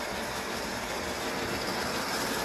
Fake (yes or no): no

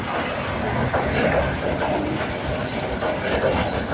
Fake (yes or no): no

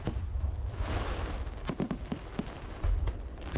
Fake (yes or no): yes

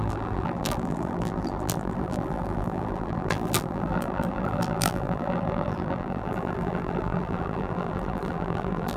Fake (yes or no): yes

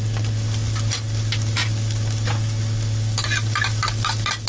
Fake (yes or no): no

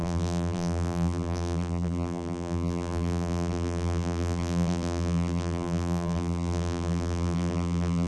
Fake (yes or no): yes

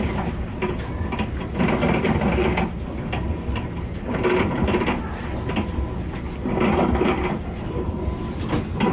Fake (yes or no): no